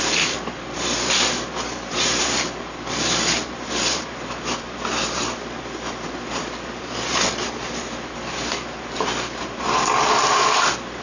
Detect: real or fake fake